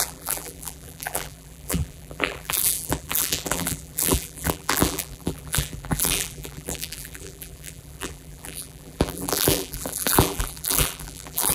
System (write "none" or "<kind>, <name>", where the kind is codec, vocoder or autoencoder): vocoder, BigVGAN v2